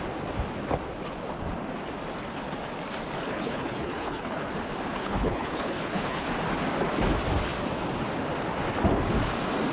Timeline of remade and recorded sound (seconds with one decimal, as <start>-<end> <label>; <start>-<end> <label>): 0.0-3.3 recorded; 3.3-4.5 remade; 4.5-5.0 recorded; 5.0-6.3 remade; 6.3-9.7 recorded